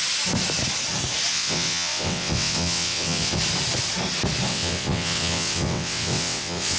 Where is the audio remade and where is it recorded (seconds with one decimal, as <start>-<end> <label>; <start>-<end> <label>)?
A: 0.0-1.3 recorded; 1.3-3.4 remade; 3.4-4.5 recorded; 4.5-6.8 remade

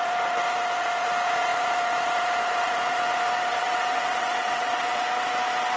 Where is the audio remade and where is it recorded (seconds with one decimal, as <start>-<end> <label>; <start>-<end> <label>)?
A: 0.0-3.5 recorded; 3.5-5.0 remade; 5.0-5.8 recorded

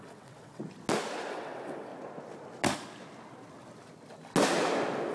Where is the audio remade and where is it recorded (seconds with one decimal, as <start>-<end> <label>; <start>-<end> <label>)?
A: 0.0-0.6 remade; 0.6-1.3 recorded; 1.3-1.9 remade; 1.9-5.1 recorded

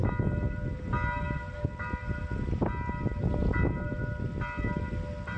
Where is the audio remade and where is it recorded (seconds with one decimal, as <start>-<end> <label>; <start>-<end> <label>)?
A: 0.0-5.4 recorded

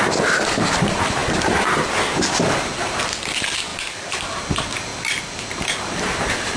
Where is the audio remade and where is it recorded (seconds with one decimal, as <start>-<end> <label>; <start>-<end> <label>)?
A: 0.0-6.6 recorded

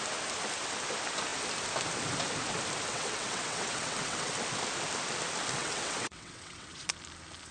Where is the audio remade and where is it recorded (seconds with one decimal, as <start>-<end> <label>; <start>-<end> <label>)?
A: 0.0-2.9 recorded; 2.9-4.3 remade; 4.3-5.6 recorded; 5.6-6.9 remade; 6.9-7.5 recorded